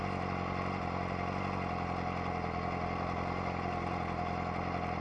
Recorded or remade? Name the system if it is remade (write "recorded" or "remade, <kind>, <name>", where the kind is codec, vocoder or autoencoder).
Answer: recorded